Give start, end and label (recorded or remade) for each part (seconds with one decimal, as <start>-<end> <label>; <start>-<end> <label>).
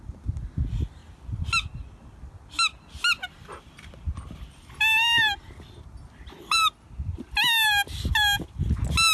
0.0-9.1 recorded